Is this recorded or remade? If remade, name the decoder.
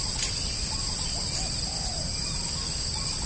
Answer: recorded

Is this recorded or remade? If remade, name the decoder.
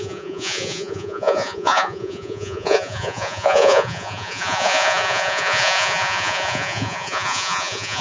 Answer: remade, vocoder, Vocos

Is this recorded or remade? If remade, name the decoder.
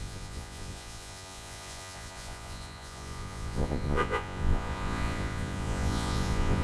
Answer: remade, vocoder, Vocos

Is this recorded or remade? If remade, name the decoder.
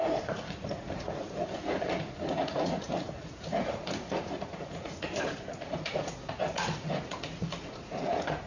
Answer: remade, vocoder, Vocos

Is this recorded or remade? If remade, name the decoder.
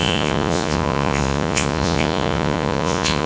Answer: remade, vocoder, Vocos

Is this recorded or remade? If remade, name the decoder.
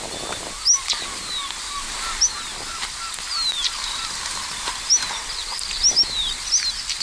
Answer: recorded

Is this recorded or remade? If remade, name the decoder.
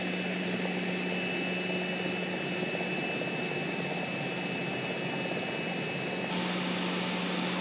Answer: recorded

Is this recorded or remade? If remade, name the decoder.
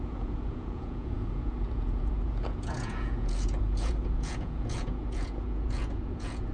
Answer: remade, vocoder, Vocos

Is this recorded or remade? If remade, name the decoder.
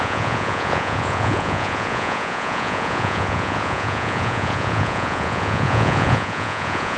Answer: remade, vocoder, Vocos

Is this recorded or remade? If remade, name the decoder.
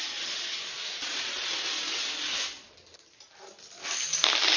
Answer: recorded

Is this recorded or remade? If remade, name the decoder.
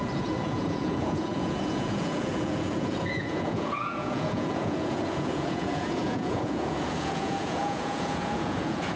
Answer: remade, vocoder, Vocos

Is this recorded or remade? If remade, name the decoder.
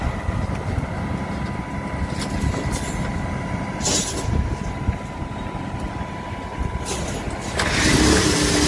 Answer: recorded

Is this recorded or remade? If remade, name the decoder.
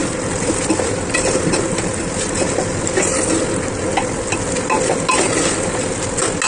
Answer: recorded